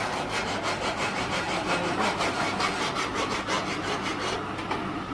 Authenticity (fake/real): real